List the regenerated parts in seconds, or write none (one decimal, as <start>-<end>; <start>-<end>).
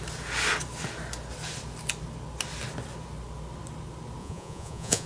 4.2-5.1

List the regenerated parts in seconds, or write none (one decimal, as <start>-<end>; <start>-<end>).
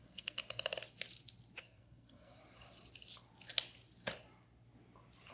0.0-0.4; 1.6-2.4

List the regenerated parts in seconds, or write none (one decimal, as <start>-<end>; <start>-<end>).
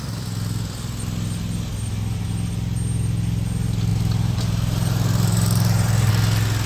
3.9-6.1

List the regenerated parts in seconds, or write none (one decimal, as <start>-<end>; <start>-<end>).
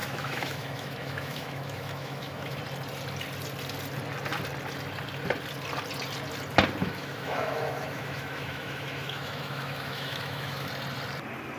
0.0-2.6; 6.8-10.7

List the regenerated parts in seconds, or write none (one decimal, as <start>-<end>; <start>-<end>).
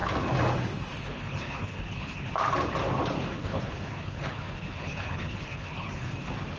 0.9-2.3; 3.4-6.1